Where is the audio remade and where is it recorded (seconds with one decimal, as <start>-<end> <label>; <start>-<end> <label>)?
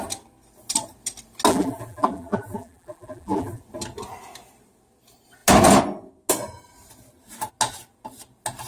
0.0-1.5 recorded; 1.5-3.6 remade; 3.6-8.7 recorded